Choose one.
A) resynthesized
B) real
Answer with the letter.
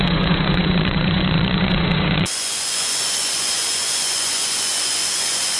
A